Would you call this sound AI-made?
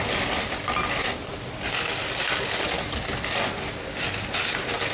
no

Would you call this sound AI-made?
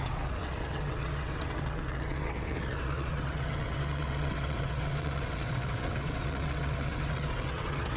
yes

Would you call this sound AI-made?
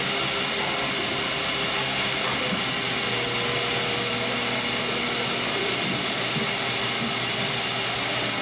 no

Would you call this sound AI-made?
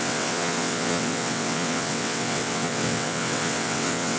yes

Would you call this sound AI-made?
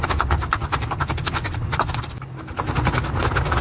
no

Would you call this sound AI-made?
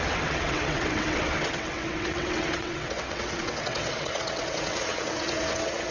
yes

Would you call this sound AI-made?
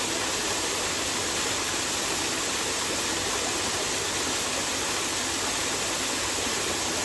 no